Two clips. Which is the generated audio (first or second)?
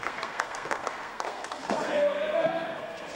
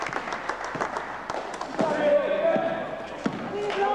first